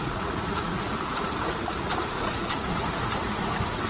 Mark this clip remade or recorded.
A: remade